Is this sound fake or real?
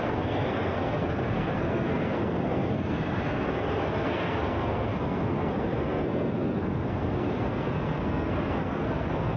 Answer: fake